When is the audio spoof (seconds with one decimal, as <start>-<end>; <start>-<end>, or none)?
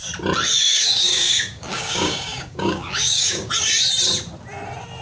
0.5-3.5